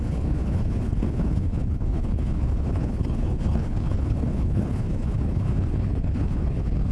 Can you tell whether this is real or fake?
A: fake